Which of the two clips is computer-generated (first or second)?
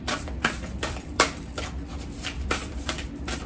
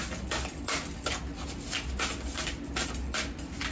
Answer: first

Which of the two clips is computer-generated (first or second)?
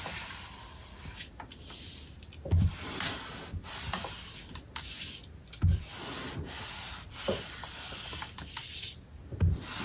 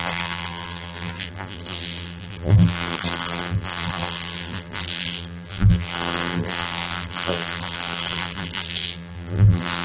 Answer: second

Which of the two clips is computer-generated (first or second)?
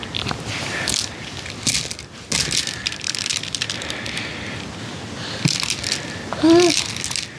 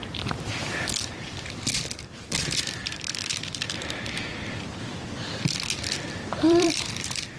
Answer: second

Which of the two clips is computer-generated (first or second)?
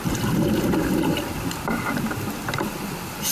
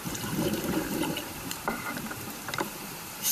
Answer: second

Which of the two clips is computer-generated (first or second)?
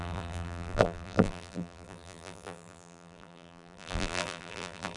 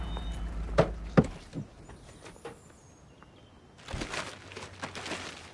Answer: first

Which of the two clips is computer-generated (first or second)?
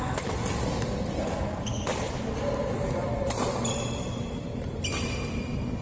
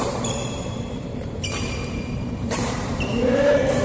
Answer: second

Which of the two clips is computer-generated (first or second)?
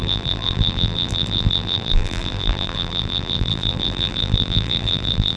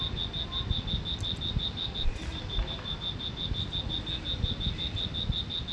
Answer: first